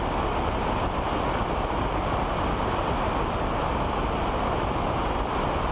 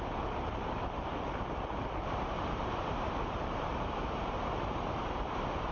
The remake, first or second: second